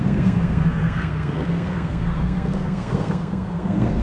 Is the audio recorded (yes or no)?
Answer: no